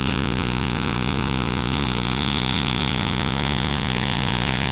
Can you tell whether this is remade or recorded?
remade